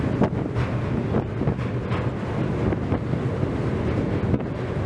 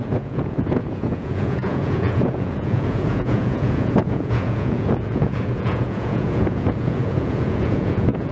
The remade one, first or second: second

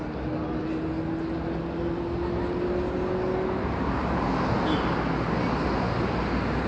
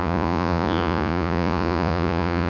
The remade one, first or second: second